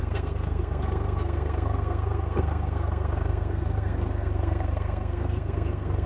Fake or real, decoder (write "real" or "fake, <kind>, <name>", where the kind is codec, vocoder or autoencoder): fake, codec, SNAC